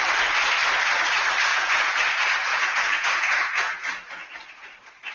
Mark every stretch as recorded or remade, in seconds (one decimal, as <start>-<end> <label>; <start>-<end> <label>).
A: 0.0-1.5 recorded; 1.5-2.0 remade; 2.0-2.5 recorded; 2.5-4.3 remade; 4.3-5.1 recorded